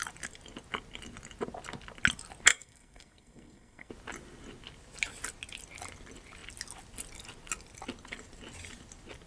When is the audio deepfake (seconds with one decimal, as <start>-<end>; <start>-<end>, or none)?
2.5-3.9